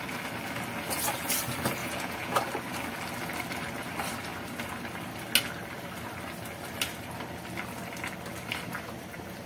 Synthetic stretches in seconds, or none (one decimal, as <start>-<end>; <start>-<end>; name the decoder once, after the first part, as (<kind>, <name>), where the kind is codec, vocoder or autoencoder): 1.8-2.4 (vocoder, Vocos)